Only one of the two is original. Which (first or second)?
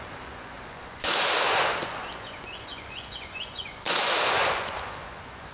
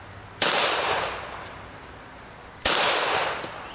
second